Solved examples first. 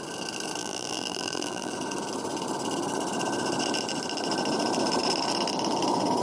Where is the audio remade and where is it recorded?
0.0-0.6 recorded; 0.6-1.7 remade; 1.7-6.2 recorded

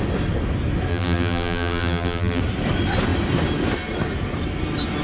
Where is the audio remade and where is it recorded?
0.0-0.9 recorded; 0.9-2.4 remade; 2.4-5.0 recorded

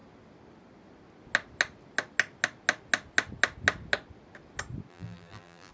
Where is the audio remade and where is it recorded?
0.0-4.9 recorded; 4.9-5.7 remade

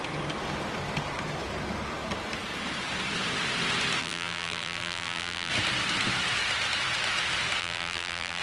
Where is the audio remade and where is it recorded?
0.0-4.0 recorded; 4.0-5.5 remade; 5.5-7.6 recorded; 7.6-8.4 remade

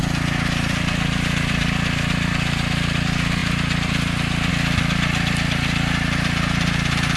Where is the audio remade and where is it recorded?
0.0-7.2 recorded

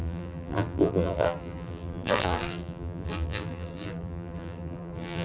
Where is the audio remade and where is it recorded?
0.0-5.2 remade

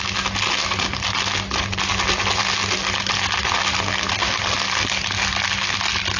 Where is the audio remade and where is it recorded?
0.0-6.2 recorded

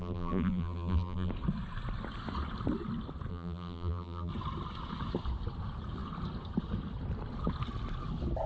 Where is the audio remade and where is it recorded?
0.0-1.3 remade; 1.3-3.3 recorded; 3.3-4.3 remade; 4.3-8.5 recorded